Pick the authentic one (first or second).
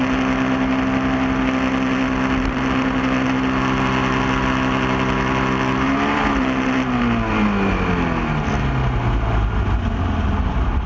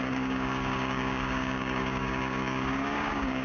first